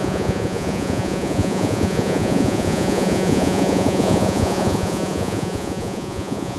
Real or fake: fake